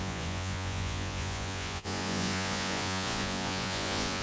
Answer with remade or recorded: remade